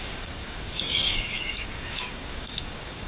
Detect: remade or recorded remade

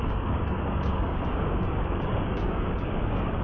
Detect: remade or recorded remade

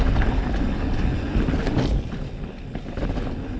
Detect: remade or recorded recorded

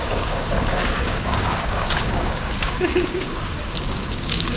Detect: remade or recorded remade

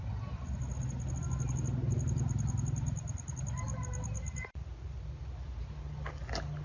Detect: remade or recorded recorded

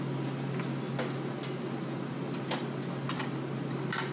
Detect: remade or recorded recorded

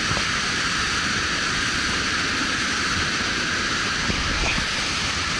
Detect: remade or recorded recorded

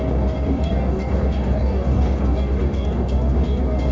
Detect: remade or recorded remade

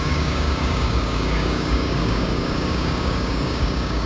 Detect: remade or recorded remade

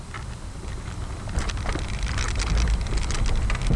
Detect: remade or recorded recorded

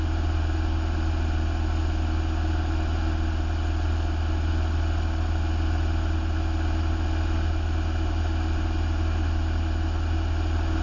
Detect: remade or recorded recorded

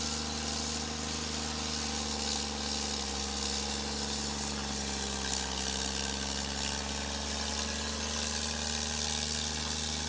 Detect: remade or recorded recorded